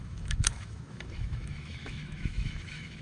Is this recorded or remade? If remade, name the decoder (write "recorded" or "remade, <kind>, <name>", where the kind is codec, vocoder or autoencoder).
remade, autoencoder, DAC-VAE